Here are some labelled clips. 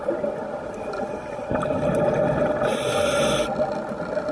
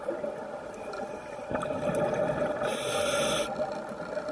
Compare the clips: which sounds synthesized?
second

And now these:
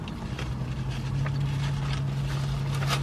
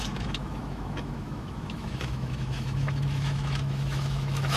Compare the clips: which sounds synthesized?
second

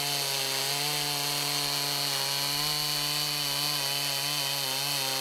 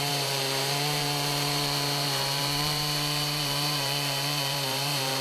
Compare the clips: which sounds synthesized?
second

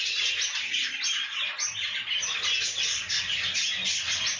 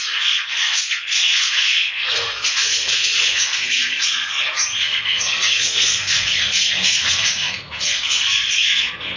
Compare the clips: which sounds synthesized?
second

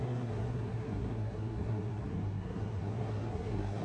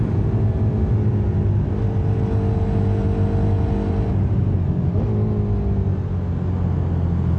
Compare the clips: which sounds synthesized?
first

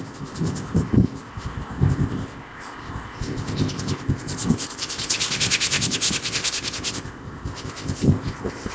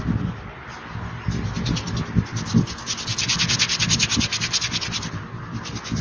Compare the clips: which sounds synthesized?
first